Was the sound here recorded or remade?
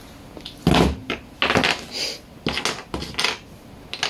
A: recorded